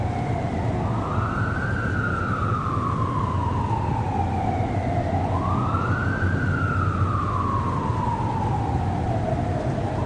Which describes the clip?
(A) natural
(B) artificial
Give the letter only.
A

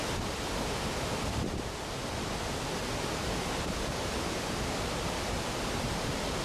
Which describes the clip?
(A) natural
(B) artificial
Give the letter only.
A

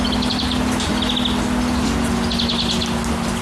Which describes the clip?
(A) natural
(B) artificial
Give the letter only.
A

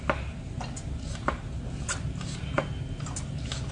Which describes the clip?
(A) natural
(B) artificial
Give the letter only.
A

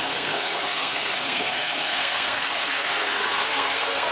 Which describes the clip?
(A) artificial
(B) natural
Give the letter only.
A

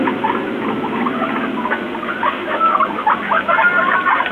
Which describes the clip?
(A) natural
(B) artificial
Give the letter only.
A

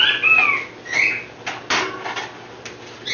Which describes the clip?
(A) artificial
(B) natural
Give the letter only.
B